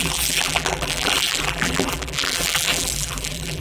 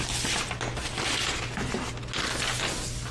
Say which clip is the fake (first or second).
first